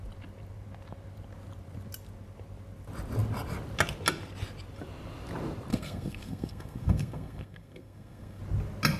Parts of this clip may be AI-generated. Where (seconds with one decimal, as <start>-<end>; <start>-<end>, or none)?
5.7-8.4